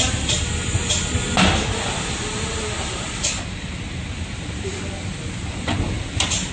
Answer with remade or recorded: recorded